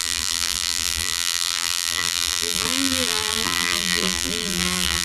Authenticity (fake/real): fake